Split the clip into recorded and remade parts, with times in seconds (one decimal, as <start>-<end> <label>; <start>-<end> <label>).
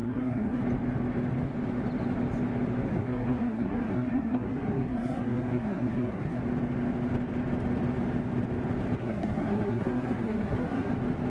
0.0-0.6 remade; 0.6-2.9 recorded; 2.9-6.4 remade; 6.4-9.0 recorded; 9.0-10.9 remade; 10.9-11.3 recorded